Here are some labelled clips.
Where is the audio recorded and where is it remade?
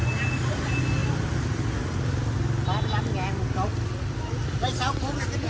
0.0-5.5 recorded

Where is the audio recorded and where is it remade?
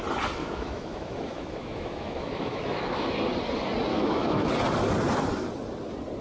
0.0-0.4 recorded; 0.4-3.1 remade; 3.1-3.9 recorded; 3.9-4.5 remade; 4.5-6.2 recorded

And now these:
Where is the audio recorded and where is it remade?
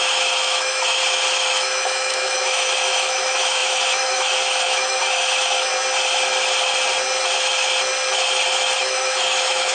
0.0-1.0 remade; 1.0-1.5 recorded; 1.5-5.7 remade; 5.7-8.8 recorded; 8.8-9.7 remade